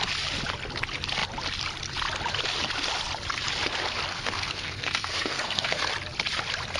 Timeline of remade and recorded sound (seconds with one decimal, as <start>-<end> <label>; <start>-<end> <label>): 0.0-4.1 recorded; 4.1-5.9 remade; 5.9-6.8 recorded